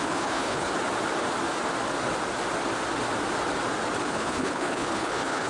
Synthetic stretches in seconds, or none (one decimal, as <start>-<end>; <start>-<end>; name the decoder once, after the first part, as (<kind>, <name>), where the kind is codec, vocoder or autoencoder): 0.0-0.7 (codec, HILCodec); 4.0-5.5